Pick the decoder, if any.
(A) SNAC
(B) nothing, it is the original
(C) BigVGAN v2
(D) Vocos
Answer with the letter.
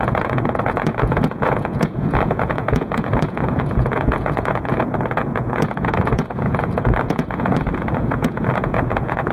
D